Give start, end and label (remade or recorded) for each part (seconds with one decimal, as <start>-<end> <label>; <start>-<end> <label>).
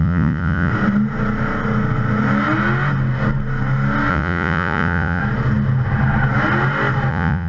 0.0-0.7 remade; 0.7-4.1 recorded; 4.1-5.2 remade; 5.2-7.1 recorded; 7.1-7.5 remade